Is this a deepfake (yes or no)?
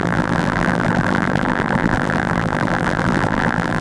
yes